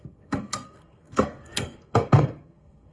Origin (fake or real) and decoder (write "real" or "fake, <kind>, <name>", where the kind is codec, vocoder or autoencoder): fake, codec, SNAC